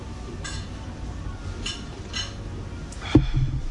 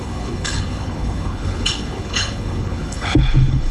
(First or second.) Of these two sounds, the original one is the first